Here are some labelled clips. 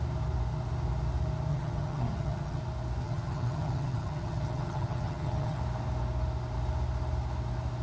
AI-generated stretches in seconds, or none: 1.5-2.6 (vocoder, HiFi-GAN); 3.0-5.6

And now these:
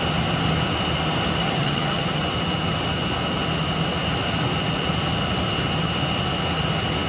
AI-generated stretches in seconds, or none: 1.4-2.2 (vocoder, HiFi-GAN)

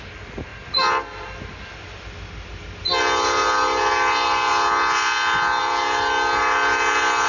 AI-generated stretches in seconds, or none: none

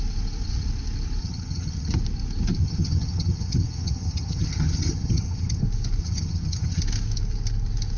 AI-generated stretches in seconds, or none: 1.2-2.0 (vocoder, HiFi-GAN); 2.6-5.6; 6.0-6.8

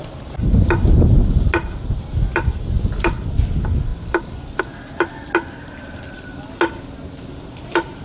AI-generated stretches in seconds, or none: none

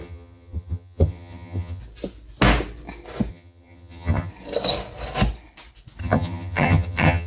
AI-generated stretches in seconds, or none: 0.0-1.8 (vocoder, HiFi-GAN); 3.3-4.3; 6.0-7.3